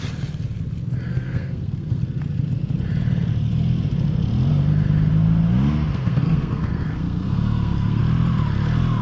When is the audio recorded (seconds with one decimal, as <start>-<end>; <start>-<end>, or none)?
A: 0.0-1.1; 2.0-5.9; 8.0-9.0